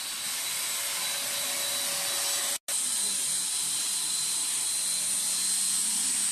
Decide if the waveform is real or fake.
real